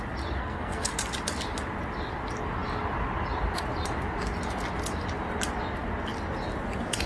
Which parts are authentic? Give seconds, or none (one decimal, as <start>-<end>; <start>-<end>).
0.0-0.4; 0.9-7.1